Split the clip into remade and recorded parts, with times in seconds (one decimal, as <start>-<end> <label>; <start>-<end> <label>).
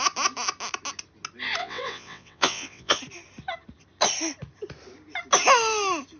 0.0-1.6 recorded; 1.6-3.0 remade; 3.0-6.2 recorded